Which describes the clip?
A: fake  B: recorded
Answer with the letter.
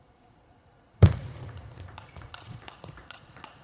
A